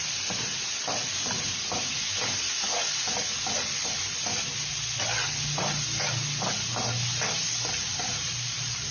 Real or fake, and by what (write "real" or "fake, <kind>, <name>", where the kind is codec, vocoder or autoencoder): real